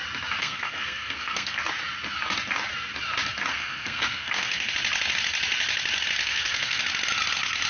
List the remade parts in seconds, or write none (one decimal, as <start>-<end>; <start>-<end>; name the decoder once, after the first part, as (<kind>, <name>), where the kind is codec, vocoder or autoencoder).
0.4-1.6 (codec, SNAC); 3.5-4.7; 6.2-6.8